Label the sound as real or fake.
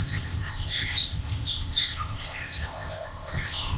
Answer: fake